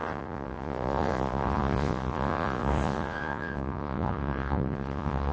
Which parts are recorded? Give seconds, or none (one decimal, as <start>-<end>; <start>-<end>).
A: none